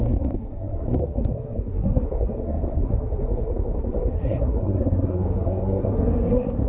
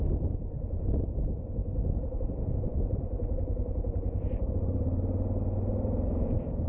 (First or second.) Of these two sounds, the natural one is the second